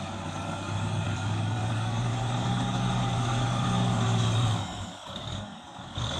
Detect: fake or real fake